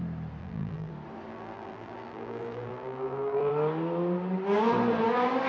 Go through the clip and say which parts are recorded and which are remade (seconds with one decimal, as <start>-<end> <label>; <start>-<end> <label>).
0.0-0.4 recorded; 0.4-0.9 remade; 0.9-1.3 recorded; 1.3-3.5 remade; 3.5-5.5 recorded